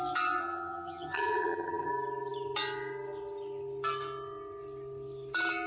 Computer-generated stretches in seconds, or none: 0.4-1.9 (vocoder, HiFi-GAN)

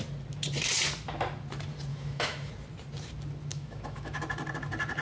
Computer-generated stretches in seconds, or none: 1.9-2.5 (autoencoder, DAC-VAE); 3.5-4.2

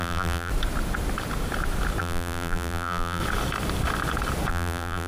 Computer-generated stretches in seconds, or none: 0.0-0.5 (vocoder, BigVGAN v2); 2.0-3.2; 4.5-5.1

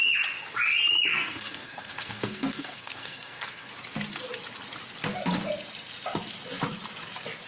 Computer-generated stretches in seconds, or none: 1.1-3.7 (codec, SNAC)

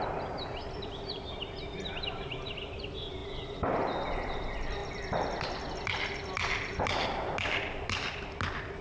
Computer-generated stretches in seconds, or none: none

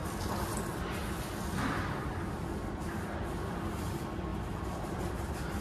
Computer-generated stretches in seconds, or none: 4.3-5.6 (vocoder, BigVGAN v2)

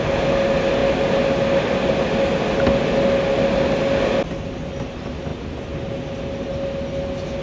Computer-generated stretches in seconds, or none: none

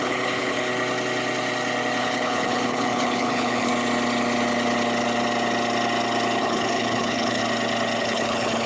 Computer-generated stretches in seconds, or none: 0.0-0.7 (codec, HILCodec); 2.0-3.7; 6.4-7.4; 8.0-8.7